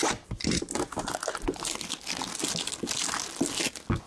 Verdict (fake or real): real